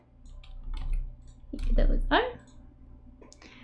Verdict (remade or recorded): recorded